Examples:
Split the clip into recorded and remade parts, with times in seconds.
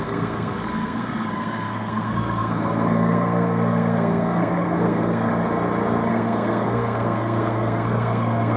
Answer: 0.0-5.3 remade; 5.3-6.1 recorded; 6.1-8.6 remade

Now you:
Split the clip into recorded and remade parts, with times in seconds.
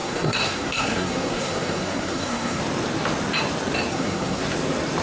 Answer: 0.0-2.6 remade; 2.6-3.9 recorded; 3.9-4.4 remade; 4.4-5.0 recorded